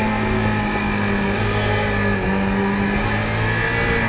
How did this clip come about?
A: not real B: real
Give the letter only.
B